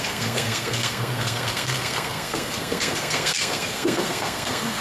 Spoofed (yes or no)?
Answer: yes